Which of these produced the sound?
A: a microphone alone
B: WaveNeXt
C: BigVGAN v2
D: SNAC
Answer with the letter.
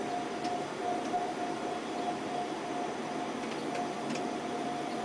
A